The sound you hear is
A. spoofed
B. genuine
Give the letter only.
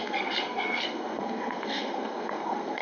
A